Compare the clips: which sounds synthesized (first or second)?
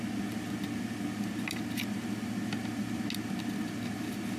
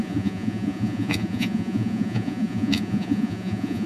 second